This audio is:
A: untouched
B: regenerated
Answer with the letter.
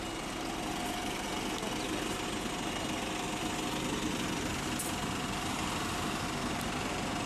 A